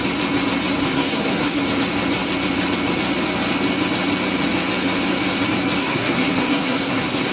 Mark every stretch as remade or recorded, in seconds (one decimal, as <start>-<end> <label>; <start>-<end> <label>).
0.0-0.8 recorded; 0.8-1.6 remade; 1.6-5.8 recorded; 5.8-7.3 remade